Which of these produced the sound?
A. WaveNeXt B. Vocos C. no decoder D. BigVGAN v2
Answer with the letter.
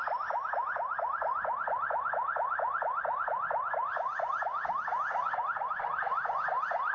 C